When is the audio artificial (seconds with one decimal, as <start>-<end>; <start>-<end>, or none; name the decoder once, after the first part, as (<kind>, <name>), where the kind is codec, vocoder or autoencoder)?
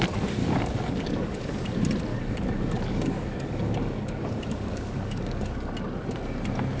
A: 0.4-1.5 (codec, DAC); 2.1-5.7